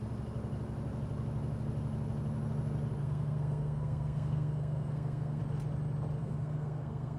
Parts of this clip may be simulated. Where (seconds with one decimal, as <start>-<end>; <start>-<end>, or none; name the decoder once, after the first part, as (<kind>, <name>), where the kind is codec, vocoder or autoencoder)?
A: 3.0-5.4 (codec, SNAC); 6.2-7.2